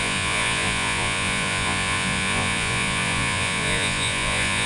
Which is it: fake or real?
fake